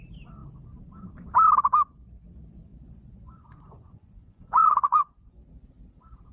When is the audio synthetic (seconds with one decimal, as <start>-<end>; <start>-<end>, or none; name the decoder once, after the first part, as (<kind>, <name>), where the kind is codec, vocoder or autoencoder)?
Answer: 2.7-5.4 (vocoder, Vocos)